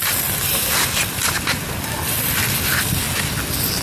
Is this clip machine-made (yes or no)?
no